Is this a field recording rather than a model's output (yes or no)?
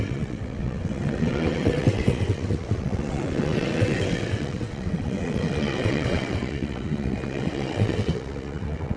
no